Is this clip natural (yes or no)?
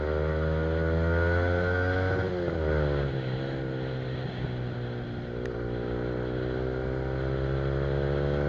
yes